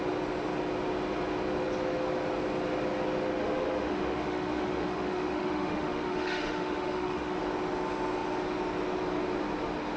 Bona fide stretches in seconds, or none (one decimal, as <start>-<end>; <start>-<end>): 0.0-3.4; 7.4-10.0